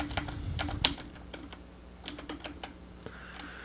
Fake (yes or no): no